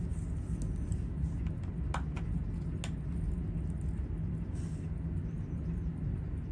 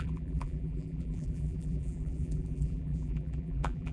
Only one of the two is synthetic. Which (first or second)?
second